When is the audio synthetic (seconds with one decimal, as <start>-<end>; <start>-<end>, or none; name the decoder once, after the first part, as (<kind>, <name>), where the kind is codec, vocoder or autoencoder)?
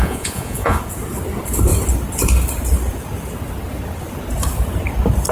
0.0-0.8 (vocoder, Vocos)